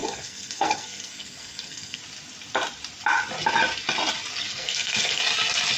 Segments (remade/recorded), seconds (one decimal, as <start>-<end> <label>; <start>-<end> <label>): 0.0-2.0 remade; 2.0-4.4 recorded; 4.4-5.2 remade; 5.2-5.8 recorded